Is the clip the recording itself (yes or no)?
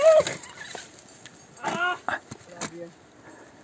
yes